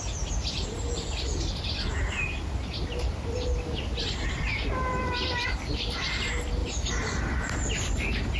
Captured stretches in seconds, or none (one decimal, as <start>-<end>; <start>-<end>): 0.0-8.4